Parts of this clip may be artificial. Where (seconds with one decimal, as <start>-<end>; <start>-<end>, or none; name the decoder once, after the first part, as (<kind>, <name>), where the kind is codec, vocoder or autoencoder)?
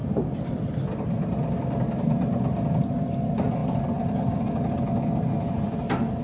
none